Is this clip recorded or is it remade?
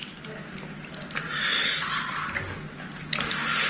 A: recorded